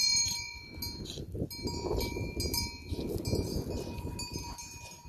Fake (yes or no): no